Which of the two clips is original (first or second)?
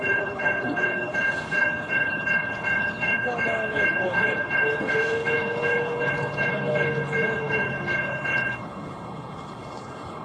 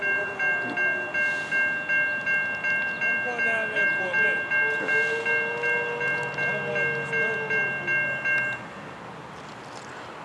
second